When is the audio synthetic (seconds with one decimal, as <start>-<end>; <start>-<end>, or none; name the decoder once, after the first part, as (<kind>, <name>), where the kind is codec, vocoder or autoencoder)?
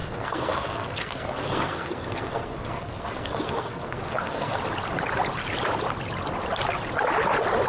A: 0.0-4.6 (codec, SNAC)